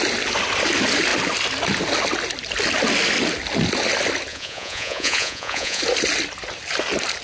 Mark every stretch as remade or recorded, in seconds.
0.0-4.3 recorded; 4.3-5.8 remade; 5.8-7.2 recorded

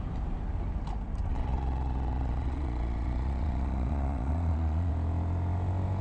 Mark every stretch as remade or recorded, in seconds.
0.0-1.3 recorded; 1.3-4.9 remade; 4.9-6.0 recorded